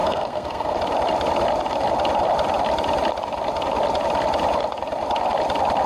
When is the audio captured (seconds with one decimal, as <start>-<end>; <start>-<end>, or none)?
0.8-5.9